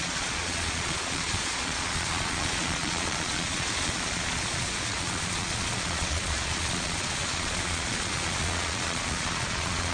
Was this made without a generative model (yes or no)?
no